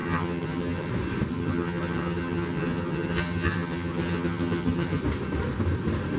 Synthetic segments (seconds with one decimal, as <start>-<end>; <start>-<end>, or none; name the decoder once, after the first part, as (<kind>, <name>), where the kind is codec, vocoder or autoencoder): 0.0-0.9 (vocoder, HiFi-GAN); 1.3-5.0